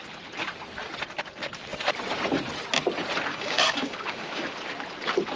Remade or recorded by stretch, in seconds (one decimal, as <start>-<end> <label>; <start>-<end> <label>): 0.0-3.3 recorded; 3.3-4.5 remade; 4.5-5.4 recorded

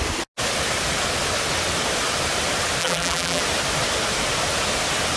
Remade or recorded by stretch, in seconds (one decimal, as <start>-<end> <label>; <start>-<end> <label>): 0.0-2.8 recorded; 2.8-3.4 remade; 3.4-5.2 recorded

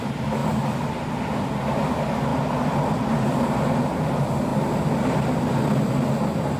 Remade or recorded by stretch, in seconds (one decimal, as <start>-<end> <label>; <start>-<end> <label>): 0.0-2.3 recorded; 2.3-3.4 remade; 3.4-6.6 recorded

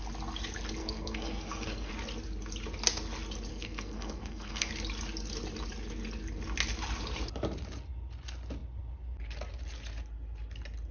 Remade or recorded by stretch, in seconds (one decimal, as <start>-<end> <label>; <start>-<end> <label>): 0.0-0.8 recorded; 0.8-1.9 remade; 1.9-3.5 recorded; 3.5-4.7 remade; 4.7-10.9 recorded

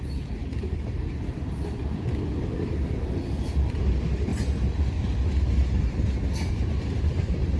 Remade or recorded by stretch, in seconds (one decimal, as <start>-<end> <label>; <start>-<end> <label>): 0.0-4.3 remade; 4.3-6.5 recorded; 6.5-7.6 remade

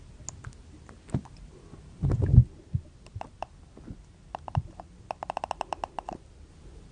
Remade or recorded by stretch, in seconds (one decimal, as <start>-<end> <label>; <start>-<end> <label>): 0.0-6.9 recorded